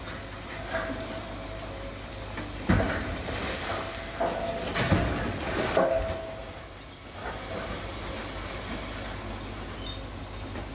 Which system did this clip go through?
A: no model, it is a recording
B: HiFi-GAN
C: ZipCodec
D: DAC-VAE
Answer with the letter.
A